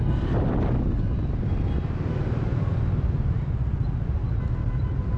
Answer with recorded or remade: recorded